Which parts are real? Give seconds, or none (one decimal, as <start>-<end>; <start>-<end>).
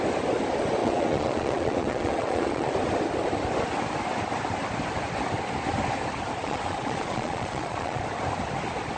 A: 0.0-0.8; 2.7-6.4; 8.0-9.0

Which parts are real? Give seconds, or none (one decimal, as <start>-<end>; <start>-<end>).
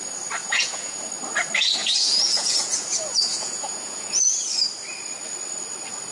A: 0.0-0.4; 1.1-1.8; 4.2-6.1